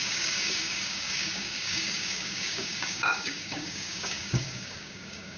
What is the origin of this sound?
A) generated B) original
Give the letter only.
A